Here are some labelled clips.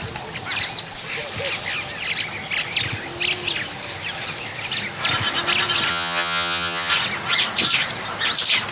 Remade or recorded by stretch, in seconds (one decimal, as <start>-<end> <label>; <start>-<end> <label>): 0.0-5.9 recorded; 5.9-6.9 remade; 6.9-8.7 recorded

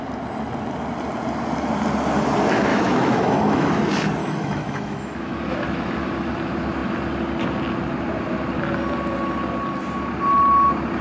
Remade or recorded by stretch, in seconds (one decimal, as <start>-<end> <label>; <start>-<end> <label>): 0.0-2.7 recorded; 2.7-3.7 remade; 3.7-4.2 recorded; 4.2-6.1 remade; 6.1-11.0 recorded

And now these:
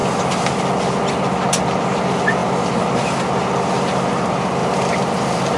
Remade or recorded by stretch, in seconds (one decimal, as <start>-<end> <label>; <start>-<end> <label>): 0.0-4.6 recorded; 4.6-5.6 remade

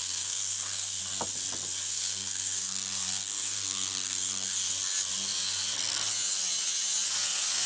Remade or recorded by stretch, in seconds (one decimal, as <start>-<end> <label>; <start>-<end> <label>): 0.0-1.0 remade; 1.0-1.9 recorded; 1.9-4.7 remade; 4.7-7.7 recorded